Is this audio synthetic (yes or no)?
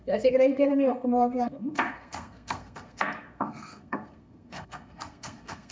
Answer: yes